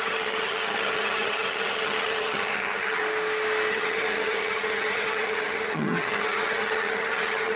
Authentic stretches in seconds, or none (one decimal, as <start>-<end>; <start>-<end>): 3.0-3.7